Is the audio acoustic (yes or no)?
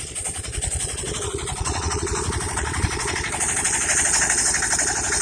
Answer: no